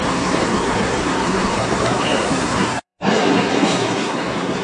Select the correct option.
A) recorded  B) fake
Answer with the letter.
B